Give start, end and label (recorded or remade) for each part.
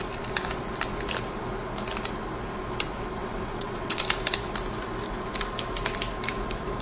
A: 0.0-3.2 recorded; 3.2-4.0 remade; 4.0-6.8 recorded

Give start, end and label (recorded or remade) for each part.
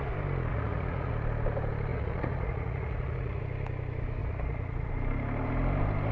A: 0.0-0.5 recorded; 0.5-1.1 remade; 1.1-1.9 recorded; 1.9-3.4 remade; 3.4-4.2 recorded; 4.2-4.9 remade; 4.9-6.1 recorded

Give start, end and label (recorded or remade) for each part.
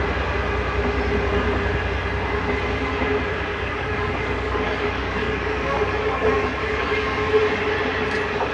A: 0.0-3.5 recorded; 3.5-7.4 remade; 7.4-8.5 recorded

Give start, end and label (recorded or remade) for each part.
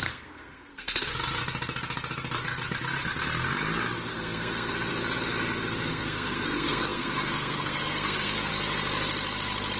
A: 0.0-1.1 remade; 1.1-4.1 recorded; 4.1-4.9 remade; 4.9-5.9 recorded; 5.9-8.5 remade; 8.5-9.8 recorded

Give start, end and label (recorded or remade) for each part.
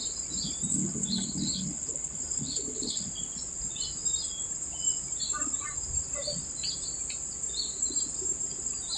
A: 0.0-0.7 recorded; 0.7-3.1 remade; 3.1-9.0 recorded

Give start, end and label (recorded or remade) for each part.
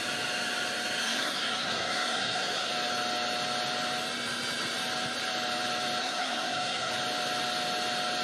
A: 0.0-1.0 recorded; 1.0-2.7 remade; 2.7-6.0 recorded; 6.0-6.9 remade; 6.9-8.2 recorded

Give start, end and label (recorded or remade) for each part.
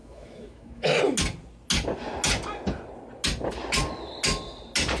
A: 0.0-1.0 remade; 1.0-5.0 recorded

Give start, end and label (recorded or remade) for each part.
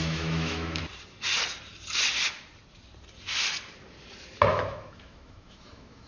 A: 0.0-0.8 remade; 0.8-4.5 recorded; 4.5-6.1 remade